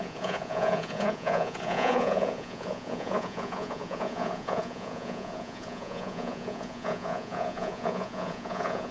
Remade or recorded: remade